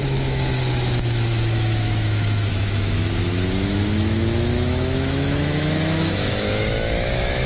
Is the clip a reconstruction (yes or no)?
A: yes